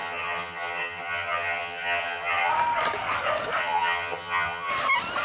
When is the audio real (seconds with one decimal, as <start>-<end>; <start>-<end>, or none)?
2.5-3.6; 4.7-5.2